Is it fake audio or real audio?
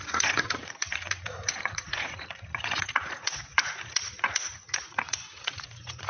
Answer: fake